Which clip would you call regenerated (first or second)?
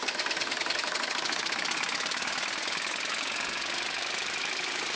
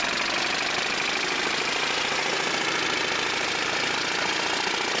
first